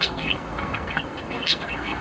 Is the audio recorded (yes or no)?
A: no